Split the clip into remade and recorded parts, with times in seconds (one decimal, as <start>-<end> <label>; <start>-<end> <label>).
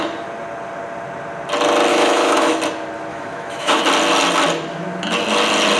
0.0-1.9 recorded; 1.9-2.6 remade; 2.6-3.1 recorded; 3.1-3.8 remade; 3.8-5.8 recorded